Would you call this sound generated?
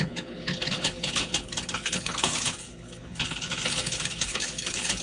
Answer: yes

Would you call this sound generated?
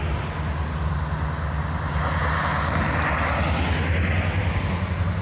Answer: no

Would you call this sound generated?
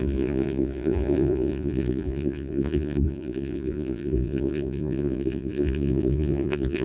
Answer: yes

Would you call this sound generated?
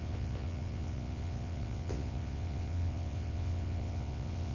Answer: yes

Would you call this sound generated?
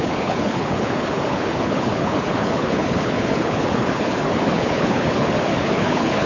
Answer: yes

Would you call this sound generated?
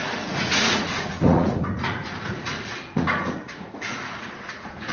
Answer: yes